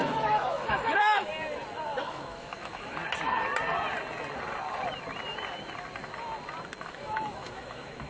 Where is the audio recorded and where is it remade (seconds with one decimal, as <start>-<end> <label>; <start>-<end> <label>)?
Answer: 0.0-1.3 remade; 1.3-2.0 recorded; 2.0-3.0 remade; 3.0-6.8 recorded; 6.8-8.1 remade